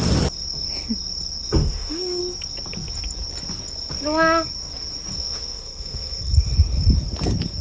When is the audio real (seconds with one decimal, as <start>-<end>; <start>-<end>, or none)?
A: 0.0-1.6; 2.2-5.2; 6.2-7.6

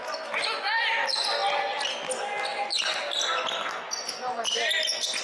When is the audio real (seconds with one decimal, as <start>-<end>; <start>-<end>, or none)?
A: 0.0-5.2

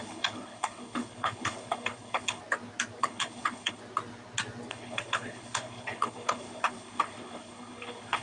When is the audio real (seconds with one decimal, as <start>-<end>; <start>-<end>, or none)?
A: 2.4-3.0; 3.8-4.7

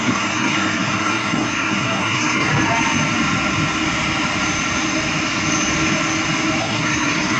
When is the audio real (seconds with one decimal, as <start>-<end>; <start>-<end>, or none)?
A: 2.5-6.6